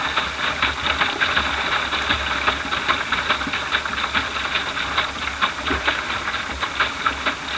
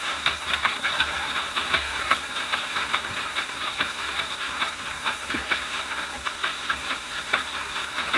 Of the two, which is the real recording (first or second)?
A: first